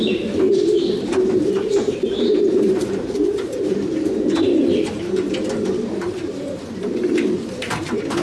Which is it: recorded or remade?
remade